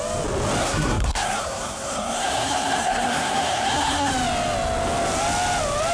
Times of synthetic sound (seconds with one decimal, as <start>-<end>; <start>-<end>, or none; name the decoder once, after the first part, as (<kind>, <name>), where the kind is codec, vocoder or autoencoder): 0.6-4.1 (codec, SNAC)